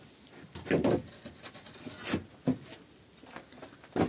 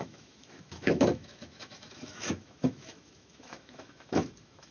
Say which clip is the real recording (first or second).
first